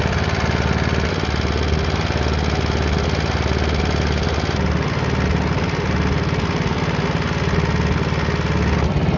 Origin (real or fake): real